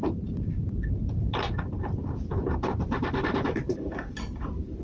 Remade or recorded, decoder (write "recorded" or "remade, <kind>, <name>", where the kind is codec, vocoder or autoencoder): remade, vocoder, BigVGAN v2